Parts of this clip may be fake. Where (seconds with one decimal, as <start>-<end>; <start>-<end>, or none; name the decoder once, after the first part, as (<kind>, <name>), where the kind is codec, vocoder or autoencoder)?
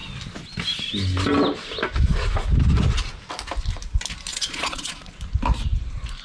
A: 4.3-5.1 (vocoder, Vocos)